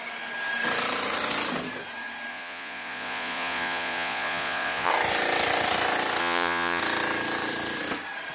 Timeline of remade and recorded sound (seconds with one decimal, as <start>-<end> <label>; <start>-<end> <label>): 0.0-2.3 recorded; 2.3-4.9 remade; 4.9-6.2 recorded; 6.2-6.8 remade; 6.8-8.3 recorded